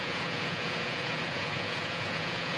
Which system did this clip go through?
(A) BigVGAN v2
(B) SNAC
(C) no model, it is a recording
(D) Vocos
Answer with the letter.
D